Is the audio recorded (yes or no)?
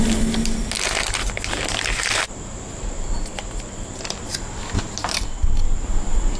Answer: yes